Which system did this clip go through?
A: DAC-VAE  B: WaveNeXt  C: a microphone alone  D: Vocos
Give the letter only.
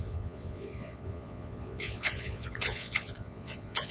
D